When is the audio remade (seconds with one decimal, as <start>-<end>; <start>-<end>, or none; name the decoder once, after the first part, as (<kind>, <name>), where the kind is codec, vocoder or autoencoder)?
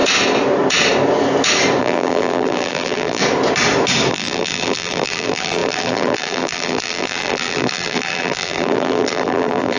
1.8-3.2 (vocoder, BigVGAN v2); 4.1-9.8